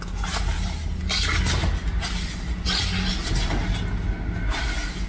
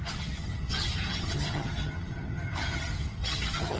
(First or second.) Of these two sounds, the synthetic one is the second